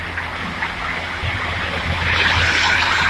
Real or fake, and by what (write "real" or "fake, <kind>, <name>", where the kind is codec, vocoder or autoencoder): real